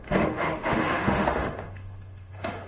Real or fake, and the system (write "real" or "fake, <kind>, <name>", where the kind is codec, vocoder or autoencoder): fake, autoencoder, DAC-VAE